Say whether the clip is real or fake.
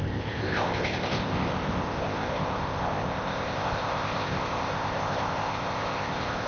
fake